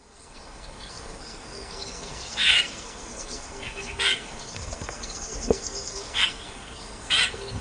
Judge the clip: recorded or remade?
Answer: remade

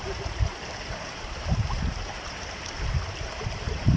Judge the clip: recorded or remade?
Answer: remade